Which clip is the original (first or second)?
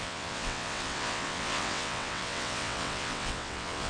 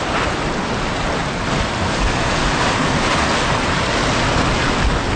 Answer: second